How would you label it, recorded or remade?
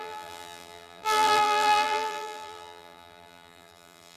remade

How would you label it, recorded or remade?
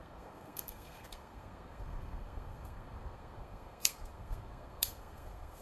remade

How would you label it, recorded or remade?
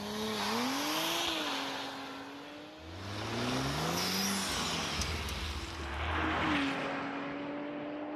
recorded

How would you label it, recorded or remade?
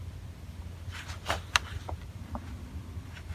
recorded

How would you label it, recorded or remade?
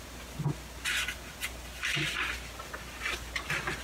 recorded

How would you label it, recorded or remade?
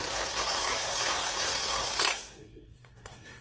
remade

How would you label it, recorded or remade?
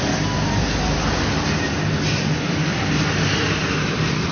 recorded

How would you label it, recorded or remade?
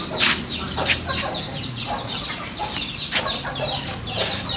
remade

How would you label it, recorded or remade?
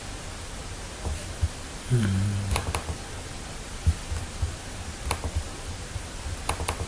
recorded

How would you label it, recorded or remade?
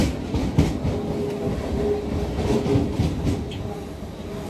recorded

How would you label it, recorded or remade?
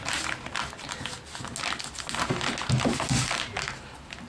recorded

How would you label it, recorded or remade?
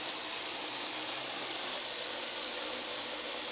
recorded